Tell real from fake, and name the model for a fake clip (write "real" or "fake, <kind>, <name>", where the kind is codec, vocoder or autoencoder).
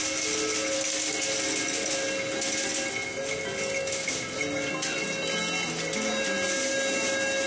real